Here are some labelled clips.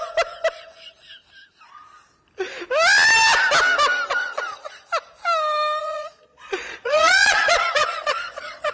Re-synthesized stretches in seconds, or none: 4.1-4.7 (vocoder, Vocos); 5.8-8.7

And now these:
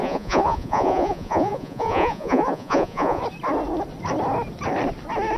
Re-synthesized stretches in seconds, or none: 0.0-3.2 (vocoder, Vocos)

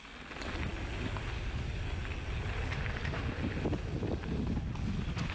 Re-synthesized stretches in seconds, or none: none